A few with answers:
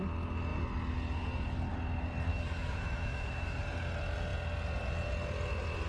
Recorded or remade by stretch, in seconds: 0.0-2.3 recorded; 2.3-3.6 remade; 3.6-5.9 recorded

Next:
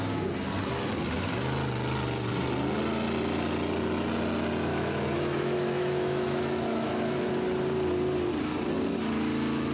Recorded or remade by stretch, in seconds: 0.0-4.7 recorded; 4.7-7.3 remade; 7.3-9.7 recorded

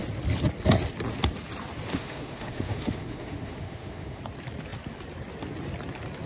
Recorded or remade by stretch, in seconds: 0.0-1.9 recorded; 1.9-4.2 remade; 4.2-6.3 recorded

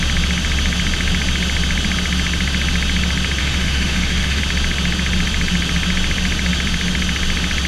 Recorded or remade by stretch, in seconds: 0.0-3.4 recorded; 3.4-4.4 remade; 4.4-7.7 recorded

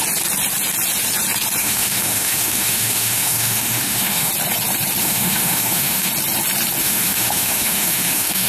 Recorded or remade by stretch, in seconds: 0.0-1.6 recorded; 1.6-4.3 remade; 4.3-5.0 recorded; 5.0-6.1 remade; 6.1-6.8 recorded; 6.8-8.5 remade

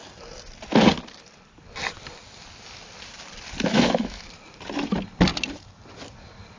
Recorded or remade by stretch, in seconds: 0.0-3.7 recorded; 3.7-4.3 remade; 4.3-6.6 recorded

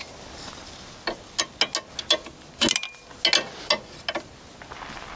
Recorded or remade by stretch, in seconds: 0.0-5.2 recorded

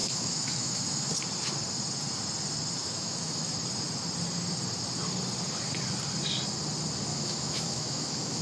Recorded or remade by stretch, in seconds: 0.0-1.1 remade; 1.1-2.8 recorded; 2.8-3.5 remade; 3.5-7.1 recorded; 7.1-8.4 remade